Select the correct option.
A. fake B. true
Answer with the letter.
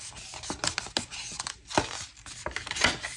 B